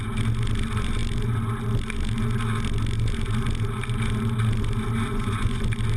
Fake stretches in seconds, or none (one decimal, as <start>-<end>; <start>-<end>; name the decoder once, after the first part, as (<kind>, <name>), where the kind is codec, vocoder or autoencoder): 5.1-5.6 (vocoder, Vocos)